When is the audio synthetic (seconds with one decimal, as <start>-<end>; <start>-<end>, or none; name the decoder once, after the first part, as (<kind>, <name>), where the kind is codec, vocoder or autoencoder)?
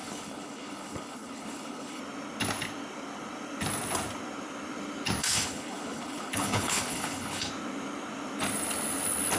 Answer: 0.0-2.0 (codec, HILCodec); 5.2-7.5